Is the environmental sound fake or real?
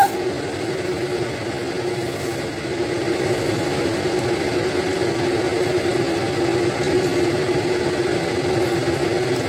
real